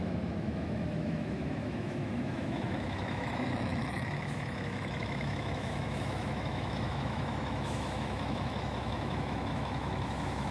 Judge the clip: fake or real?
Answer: fake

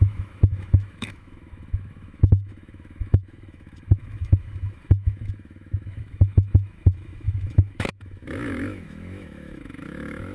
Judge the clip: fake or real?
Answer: fake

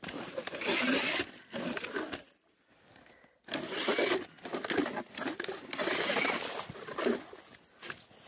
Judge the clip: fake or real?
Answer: real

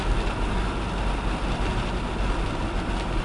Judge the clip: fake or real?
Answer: real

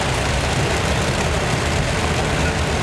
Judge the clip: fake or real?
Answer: real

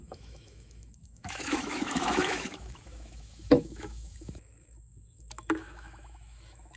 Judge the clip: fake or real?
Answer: fake